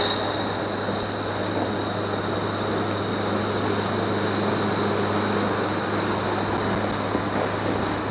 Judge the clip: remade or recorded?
recorded